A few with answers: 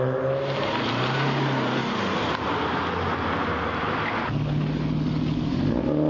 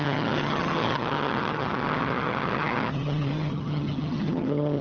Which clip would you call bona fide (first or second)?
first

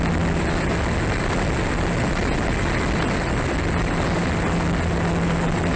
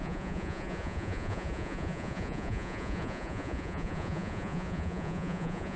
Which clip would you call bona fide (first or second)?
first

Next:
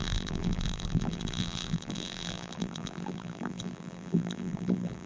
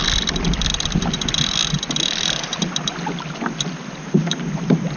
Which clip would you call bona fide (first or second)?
second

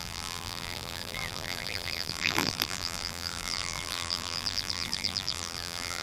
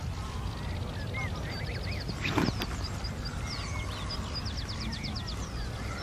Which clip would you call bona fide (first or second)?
second